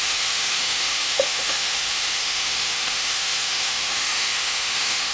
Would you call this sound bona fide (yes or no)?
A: no